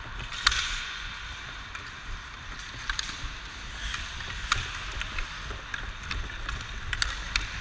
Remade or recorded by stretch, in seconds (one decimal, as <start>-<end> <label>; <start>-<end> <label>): 0.0-0.6 recorded; 0.6-1.1 remade; 1.1-7.6 recorded